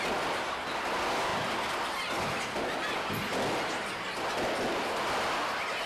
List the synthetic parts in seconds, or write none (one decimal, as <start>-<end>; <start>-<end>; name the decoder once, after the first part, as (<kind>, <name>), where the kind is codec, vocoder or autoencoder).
none